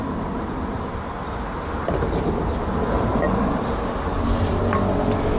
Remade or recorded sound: recorded